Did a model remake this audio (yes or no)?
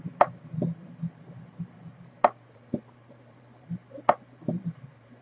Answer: yes